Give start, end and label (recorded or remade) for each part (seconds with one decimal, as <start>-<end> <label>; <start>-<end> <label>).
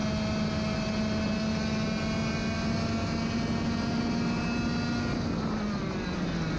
0.0-6.6 recorded